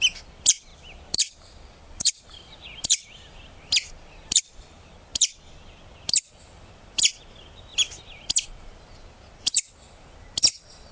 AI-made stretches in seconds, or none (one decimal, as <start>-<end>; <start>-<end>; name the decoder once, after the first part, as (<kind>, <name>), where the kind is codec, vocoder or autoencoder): 0.0-5.1 (vocoder, BigVGAN v2); 6.4-10.9